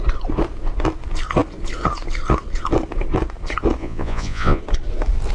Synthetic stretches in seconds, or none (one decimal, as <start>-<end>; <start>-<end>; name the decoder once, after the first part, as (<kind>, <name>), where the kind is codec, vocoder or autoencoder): 3.8-4.6 (vocoder, Vocos)